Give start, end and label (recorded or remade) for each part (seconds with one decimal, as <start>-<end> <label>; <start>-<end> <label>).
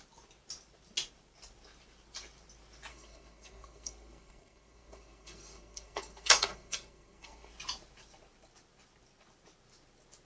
0.0-2.9 recorded; 2.9-7.5 remade; 7.5-10.3 recorded